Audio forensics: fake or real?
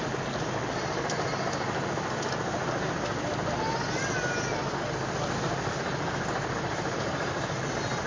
real